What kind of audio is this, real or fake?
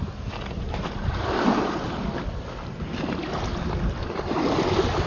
real